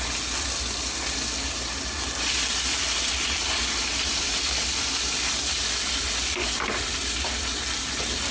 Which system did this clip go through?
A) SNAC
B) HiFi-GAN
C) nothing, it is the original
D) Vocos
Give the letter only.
C